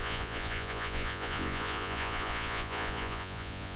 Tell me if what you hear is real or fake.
fake